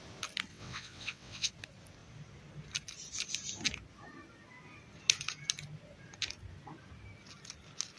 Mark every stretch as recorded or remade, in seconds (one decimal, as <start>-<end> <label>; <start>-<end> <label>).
0.0-0.5 recorded; 0.5-1.5 remade; 1.5-8.0 recorded